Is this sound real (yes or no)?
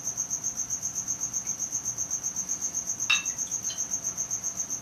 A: yes